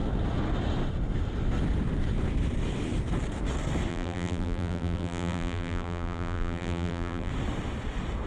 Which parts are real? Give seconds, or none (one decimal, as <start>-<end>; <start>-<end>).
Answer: 0.0-3.9; 7.3-8.3